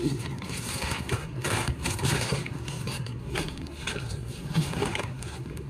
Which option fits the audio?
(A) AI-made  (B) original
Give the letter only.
A